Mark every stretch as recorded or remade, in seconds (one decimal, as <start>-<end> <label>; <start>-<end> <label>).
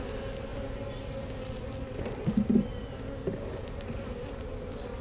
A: 0.0-5.0 recorded